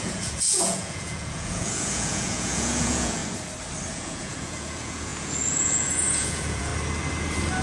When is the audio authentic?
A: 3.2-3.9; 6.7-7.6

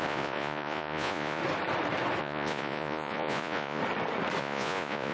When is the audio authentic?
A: 1.4-2.2; 3.8-4.4

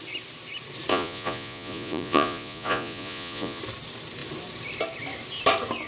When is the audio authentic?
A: 0.0-0.9; 3.6-5.9